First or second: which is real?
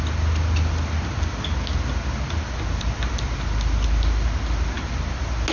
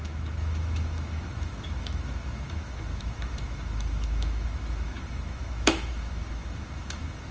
first